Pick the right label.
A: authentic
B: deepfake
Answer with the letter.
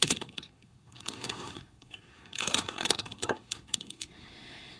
B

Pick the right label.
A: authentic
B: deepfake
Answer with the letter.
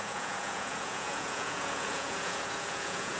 B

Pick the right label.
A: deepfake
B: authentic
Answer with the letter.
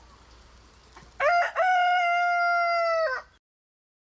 B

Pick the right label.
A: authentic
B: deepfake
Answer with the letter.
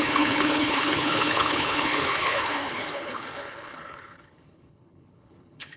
B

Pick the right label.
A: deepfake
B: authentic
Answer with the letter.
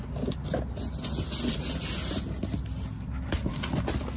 B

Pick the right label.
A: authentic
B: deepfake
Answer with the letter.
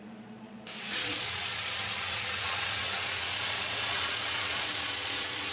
B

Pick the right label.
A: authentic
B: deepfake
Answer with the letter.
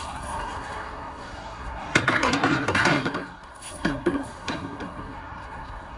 B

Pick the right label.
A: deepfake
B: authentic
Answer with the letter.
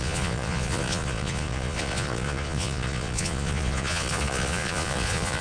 A